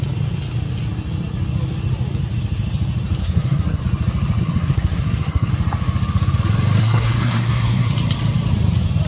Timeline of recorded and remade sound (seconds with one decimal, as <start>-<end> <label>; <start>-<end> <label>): 0.0-3.2 recorded; 3.2-3.8 remade; 3.8-4.4 recorded; 4.4-5.5 remade; 5.5-6.8 recorded; 6.8-7.9 remade; 7.9-9.1 recorded